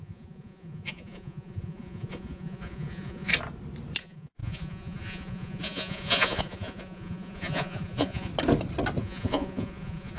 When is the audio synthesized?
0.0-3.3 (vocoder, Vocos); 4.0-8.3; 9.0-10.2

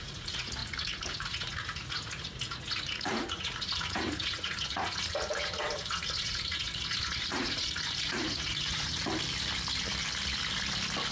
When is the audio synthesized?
0.0-9.1 (vocoder, Vocos)

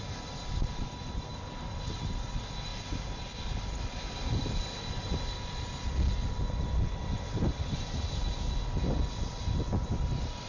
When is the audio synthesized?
none

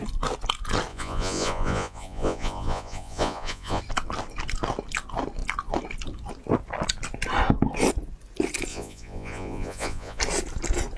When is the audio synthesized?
0.9-3.8 (vocoder, Vocos); 8.7-10.2

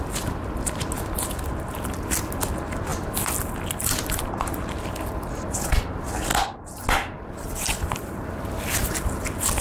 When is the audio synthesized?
none

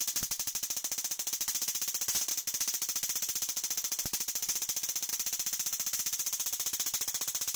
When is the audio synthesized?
none

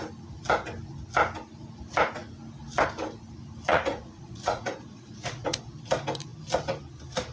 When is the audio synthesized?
3.7-5.6 (vocoder, Vocos)

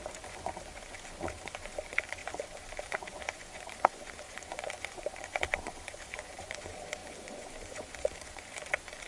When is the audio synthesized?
0.0-9.1 (vocoder, Vocos)